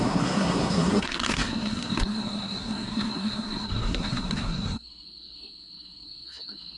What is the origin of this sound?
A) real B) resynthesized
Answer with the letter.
B